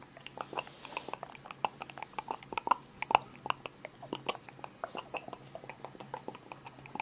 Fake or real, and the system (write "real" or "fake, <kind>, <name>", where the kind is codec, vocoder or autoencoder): real